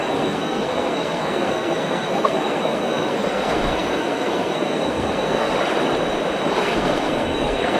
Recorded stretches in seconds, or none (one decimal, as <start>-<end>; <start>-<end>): 5.5-6.6